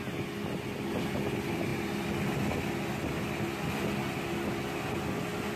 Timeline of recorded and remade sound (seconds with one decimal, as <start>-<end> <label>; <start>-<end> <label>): 0.0-5.6 recorded